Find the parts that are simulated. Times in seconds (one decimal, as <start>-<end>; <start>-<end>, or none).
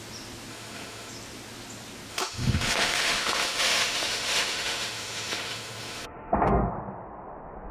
0.5-1.1; 2.1-6.7